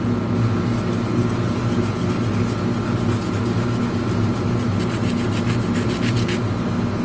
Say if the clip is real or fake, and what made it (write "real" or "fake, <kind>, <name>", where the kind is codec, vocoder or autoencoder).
real